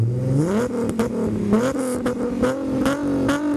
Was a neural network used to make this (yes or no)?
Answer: no